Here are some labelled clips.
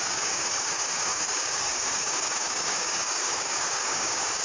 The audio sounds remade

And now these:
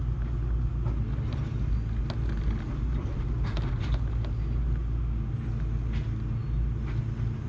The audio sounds recorded